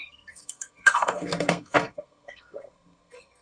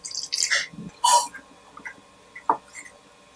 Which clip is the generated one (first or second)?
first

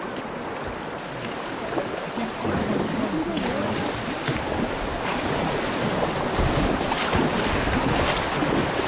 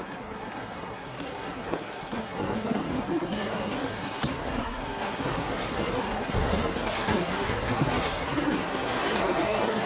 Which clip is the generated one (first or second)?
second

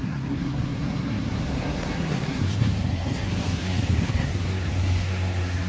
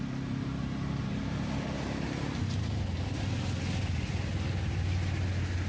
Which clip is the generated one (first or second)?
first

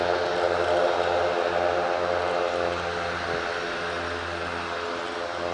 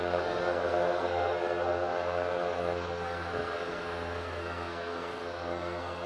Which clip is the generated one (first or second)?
second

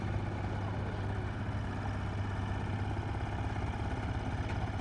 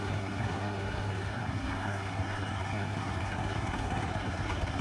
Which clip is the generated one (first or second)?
second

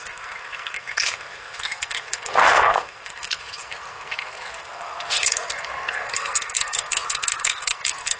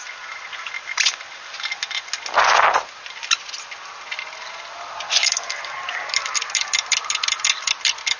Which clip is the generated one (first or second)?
first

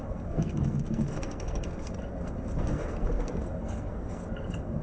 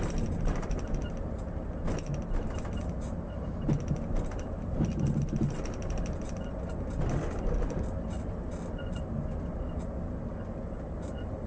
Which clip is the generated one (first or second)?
first